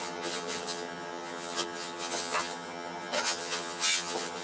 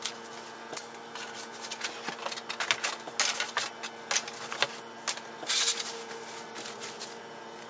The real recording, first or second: second